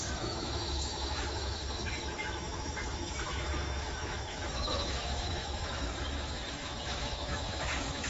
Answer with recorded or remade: remade